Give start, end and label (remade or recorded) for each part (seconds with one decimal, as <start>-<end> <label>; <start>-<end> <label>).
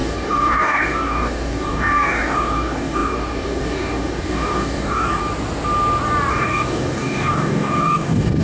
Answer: 0.0-5.2 remade; 5.2-6.3 recorded; 6.3-8.4 remade